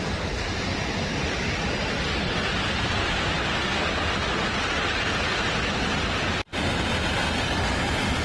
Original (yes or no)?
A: yes